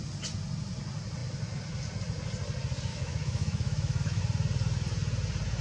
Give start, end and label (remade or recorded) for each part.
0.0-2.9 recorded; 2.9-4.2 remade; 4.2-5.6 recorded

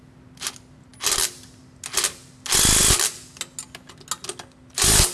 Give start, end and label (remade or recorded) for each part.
0.0-5.1 recorded

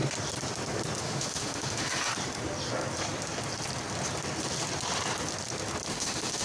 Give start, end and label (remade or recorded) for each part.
0.0-1.0 recorded; 1.0-2.1 remade; 2.1-5.9 recorded; 5.9-6.4 remade